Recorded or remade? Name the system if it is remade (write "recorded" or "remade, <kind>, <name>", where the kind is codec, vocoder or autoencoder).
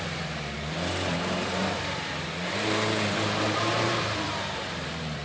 remade, vocoder, BigVGAN v2